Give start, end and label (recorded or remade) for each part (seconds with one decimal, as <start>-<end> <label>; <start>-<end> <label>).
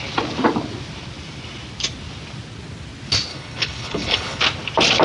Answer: 0.0-3.3 recorded; 3.3-4.4 remade; 4.4-5.0 recorded